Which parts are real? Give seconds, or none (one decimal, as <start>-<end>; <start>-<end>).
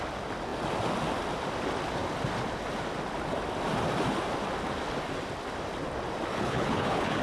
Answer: 0.0-6.3